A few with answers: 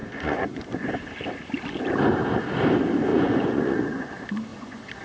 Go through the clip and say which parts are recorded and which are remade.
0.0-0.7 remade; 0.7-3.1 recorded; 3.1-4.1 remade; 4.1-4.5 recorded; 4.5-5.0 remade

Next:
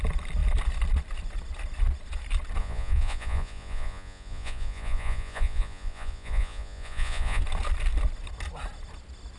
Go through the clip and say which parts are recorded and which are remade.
0.0-2.6 recorded; 2.6-7.4 remade; 7.4-9.4 recorded

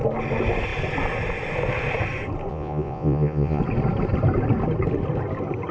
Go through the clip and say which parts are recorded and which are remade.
0.0-2.5 recorded; 2.5-3.6 remade; 3.6-5.7 recorded

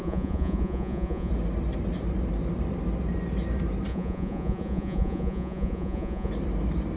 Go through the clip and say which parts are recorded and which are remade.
0.0-1.3 remade; 1.3-3.9 recorded; 3.9-6.3 remade; 6.3-7.0 recorded

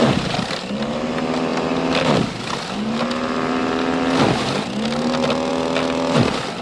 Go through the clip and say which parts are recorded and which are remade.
0.0-6.6 recorded

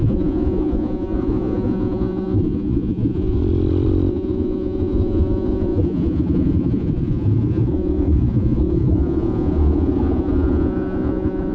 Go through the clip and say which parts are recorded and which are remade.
0.0-3.4 remade; 3.4-4.1 recorded; 4.1-11.5 remade